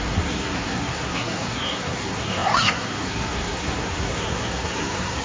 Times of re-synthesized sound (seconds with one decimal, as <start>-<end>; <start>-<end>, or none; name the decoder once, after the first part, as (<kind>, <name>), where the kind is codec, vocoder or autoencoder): 0.0-5.2 (codec, SNAC)